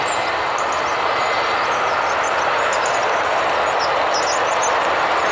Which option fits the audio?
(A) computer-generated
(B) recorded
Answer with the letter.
B